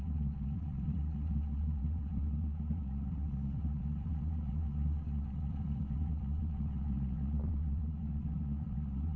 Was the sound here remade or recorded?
remade